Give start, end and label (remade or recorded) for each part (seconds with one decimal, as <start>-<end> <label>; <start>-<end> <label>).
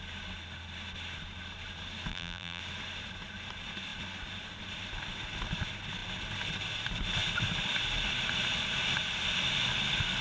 0.0-2.1 recorded; 2.1-2.6 remade; 2.6-10.2 recorded